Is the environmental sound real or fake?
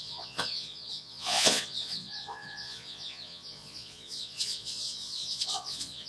fake